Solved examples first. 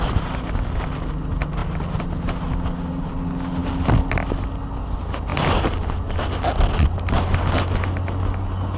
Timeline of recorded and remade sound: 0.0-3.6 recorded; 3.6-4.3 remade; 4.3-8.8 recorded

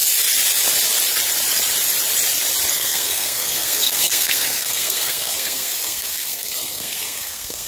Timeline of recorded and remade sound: 0.0-2.7 recorded; 2.7-7.7 remade

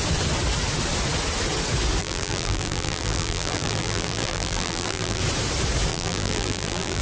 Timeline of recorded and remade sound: 0.0-2.0 recorded; 2.0-5.2 remade; 5.2-5.9 recorded; 5.9-7.0 remade

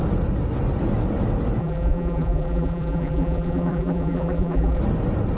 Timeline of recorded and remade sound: 0.0-1.6 recorded; 1.6-4.8 remade; 4.8-5.4 recorded